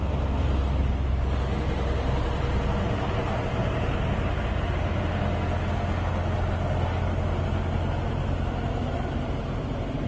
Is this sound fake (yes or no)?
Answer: no